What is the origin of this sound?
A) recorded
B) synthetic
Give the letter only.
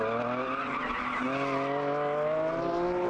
A